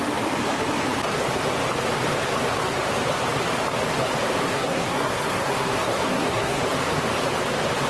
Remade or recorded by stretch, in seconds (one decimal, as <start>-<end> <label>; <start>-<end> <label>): 0.0-4.4 recorded; 4.4-6.6 remade; 6.6-7.9 recorded